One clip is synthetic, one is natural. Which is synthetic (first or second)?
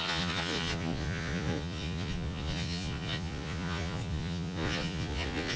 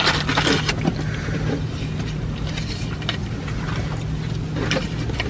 first